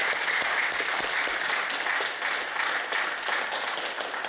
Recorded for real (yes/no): yes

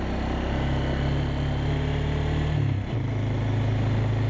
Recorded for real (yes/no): yes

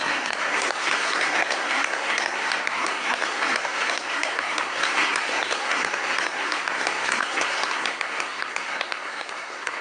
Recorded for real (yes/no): no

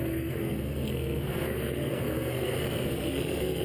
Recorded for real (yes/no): no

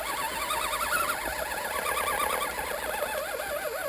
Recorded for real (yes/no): yes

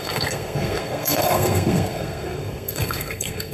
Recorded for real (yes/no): no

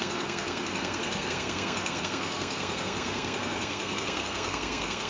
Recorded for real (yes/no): no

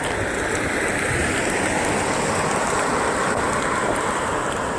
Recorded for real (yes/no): yes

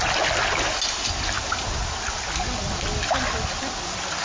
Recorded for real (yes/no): yes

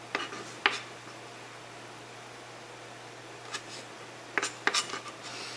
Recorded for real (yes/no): yes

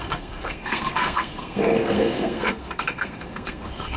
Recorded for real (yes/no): no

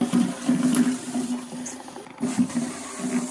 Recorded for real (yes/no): yes